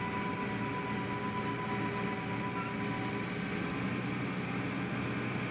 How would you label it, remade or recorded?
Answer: recorded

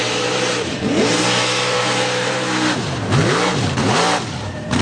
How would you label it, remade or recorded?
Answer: remade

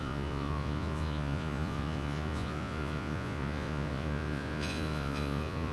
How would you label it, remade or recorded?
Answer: remade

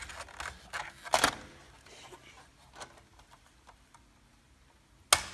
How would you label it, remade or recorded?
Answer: recorded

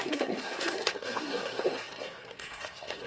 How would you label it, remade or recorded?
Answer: remade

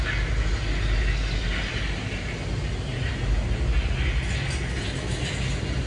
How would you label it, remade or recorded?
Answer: recorded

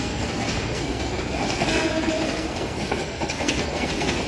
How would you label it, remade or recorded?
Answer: remade